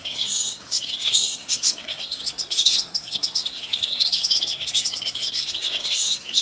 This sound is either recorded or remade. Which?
remade